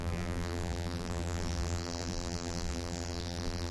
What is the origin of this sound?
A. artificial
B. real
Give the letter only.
A